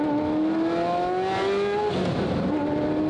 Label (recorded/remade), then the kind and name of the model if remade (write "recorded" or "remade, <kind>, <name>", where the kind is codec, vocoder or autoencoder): recorded